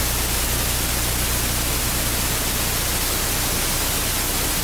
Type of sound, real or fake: real